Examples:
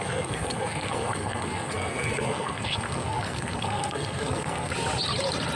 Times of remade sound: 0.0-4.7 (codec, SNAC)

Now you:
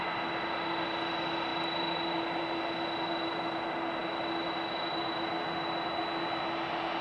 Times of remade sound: none

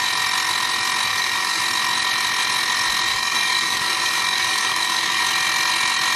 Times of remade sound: 1.1-1.6 (codec, DAC); 3.1-5.2

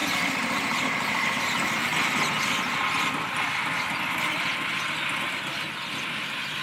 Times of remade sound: 0.0-1.4 (vocoder, BigVGAN v2)

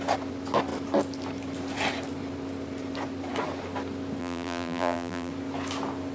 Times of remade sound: 4.2-5.3 (vocoder, BigVGAN v2)

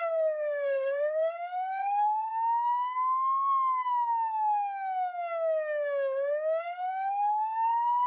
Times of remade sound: 0.0-2.3 (codec, SNAC); 6.6-8.1